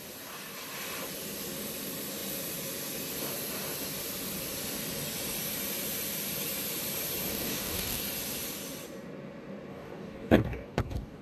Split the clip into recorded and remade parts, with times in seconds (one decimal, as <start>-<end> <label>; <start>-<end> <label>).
0.0-7.3 recorded; 7.3-8.0 remade; 8.0-9.7 recorded; 9.7-11.2 remade